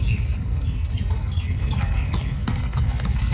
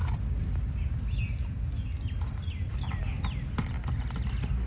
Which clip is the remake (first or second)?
first